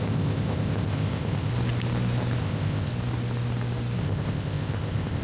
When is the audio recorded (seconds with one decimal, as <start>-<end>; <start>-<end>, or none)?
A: 1.5-2.4; 2.9-4.0